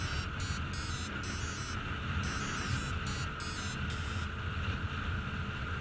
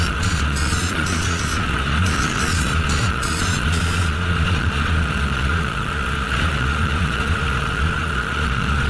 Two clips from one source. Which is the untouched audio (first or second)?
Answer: first